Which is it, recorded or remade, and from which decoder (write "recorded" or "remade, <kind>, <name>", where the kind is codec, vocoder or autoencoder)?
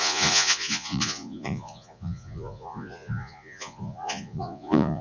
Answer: remade, vocoder, Vocos